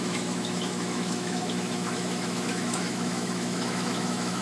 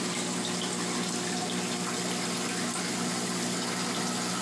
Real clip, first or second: second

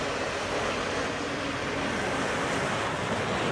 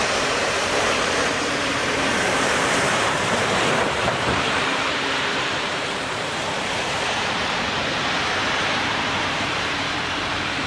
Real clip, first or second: first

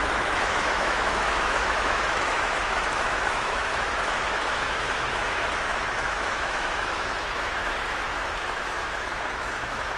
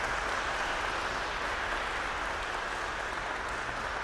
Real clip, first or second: second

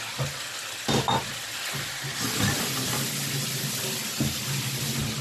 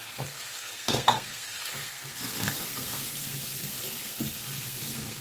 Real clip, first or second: first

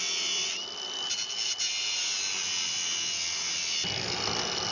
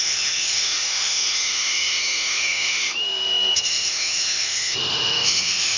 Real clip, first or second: first